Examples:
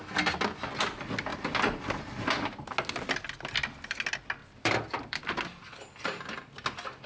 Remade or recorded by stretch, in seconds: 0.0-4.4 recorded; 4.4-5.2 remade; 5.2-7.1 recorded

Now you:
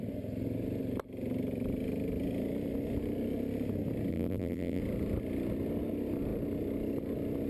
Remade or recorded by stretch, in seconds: 0.0-4.1 recorded; 4.1-4.8 remade; 4.8-7.5 recorded

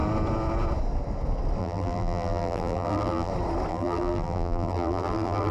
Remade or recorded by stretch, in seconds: 0.0-1.6 recorded; 1.6-3.3 remade; 3.3-3.7 recorded; 3.7-5.5 remade

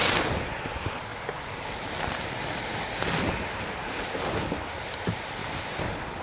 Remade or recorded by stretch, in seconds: 0.0-6.2 remade

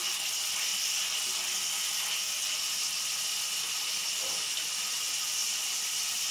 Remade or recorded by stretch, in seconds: 0.0-5.4 recorded; 5.4-6.3 remade